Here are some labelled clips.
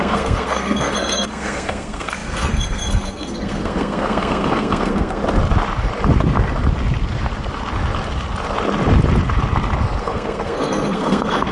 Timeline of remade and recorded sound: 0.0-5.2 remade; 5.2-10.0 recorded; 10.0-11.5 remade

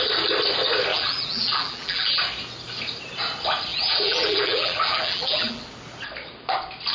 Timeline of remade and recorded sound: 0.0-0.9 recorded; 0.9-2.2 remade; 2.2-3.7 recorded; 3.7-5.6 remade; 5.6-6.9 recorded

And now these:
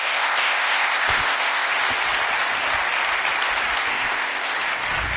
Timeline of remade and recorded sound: 0.0-1.7 remade; 1.7-3.9 recorded; 3.9-4.5 remade; 4.5-5.2 recorded